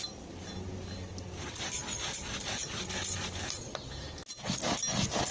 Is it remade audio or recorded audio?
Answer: recorded